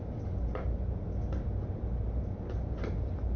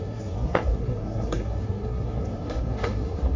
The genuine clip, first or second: first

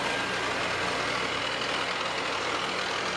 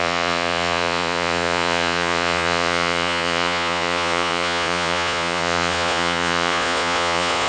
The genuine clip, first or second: first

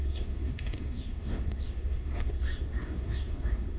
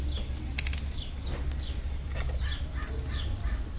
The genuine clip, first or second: second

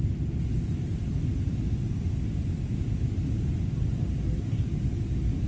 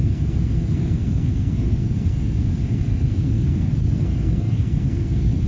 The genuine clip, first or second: first